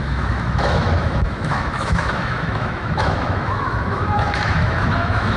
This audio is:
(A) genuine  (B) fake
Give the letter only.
B